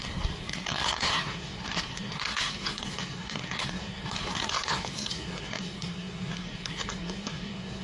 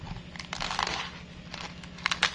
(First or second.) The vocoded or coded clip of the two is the first